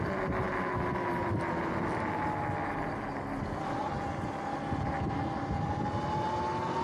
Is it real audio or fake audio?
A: real